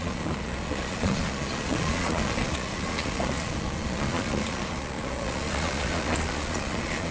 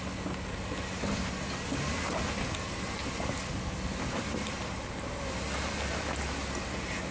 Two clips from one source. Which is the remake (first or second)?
first